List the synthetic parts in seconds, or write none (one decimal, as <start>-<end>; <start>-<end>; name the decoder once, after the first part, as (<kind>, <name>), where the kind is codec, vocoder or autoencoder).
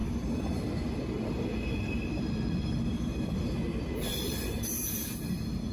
0.0-0.6 (vocoder, BigVGAN v2); 4.1-5.7